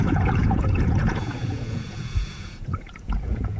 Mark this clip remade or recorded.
remade